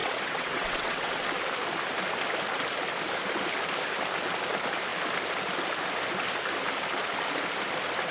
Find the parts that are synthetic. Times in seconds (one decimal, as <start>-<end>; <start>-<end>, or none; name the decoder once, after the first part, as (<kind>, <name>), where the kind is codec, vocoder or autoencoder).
0.0-1.2 (vocoder, WaveNeXt)